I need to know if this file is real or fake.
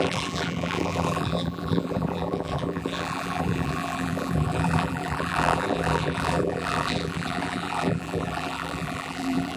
fake